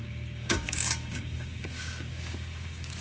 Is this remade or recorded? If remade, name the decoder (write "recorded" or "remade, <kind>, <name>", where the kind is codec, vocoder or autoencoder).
remade, codec, DAC